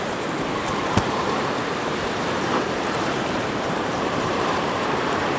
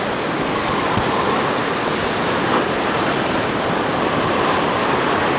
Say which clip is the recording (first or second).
second